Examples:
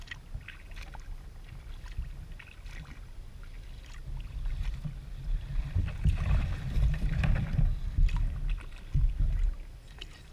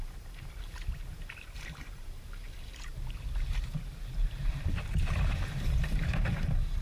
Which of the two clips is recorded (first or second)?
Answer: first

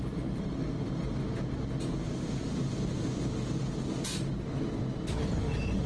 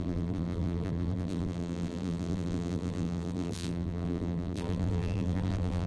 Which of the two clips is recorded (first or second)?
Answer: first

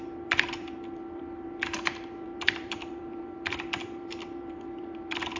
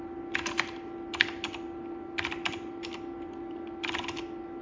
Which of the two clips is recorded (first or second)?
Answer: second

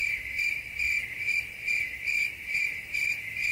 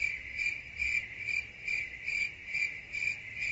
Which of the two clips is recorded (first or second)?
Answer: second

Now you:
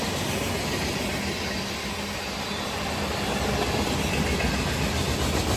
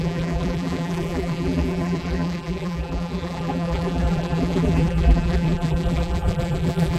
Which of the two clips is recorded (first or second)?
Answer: first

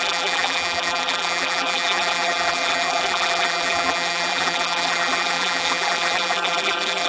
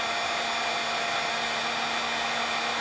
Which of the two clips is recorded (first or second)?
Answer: second